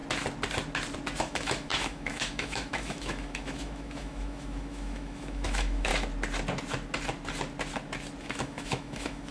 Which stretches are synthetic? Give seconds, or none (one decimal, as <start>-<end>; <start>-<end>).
1.2-5.9; 8.2-9.3